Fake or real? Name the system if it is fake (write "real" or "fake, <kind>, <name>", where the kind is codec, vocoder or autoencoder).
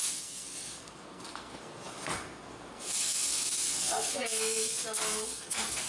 fake, codec, SNAC